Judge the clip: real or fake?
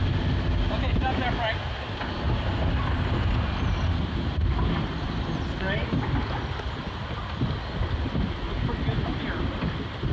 real